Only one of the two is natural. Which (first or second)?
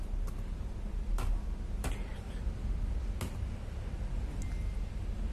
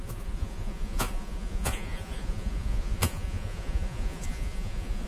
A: first